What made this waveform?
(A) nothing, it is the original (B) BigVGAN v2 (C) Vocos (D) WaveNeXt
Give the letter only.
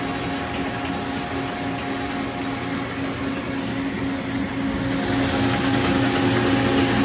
A